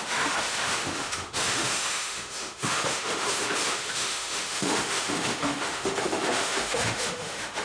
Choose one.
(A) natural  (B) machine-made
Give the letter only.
B